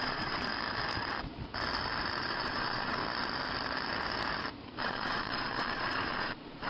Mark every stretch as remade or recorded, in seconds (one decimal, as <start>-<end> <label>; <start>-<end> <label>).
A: 0.0-0.5 remade; 0.5-2.4 recorded; 2.4-3.0 remade; 3.0-4.8 recorded; 4.8-6.7 remade